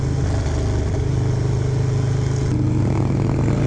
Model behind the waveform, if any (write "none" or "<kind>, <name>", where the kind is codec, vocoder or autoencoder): none